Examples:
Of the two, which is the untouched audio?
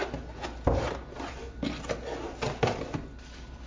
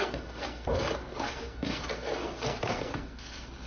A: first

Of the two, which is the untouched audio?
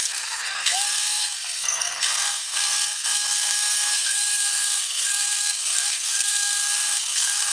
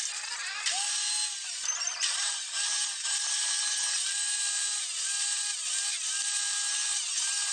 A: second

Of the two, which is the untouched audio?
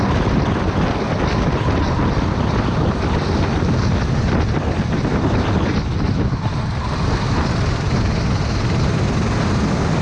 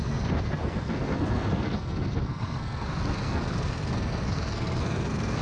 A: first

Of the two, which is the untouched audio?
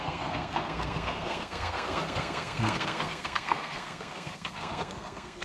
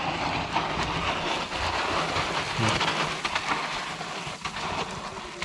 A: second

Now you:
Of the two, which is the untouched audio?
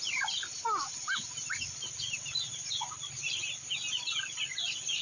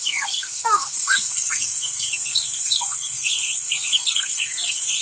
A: first